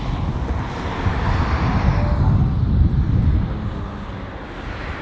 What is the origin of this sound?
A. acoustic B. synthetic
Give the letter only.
A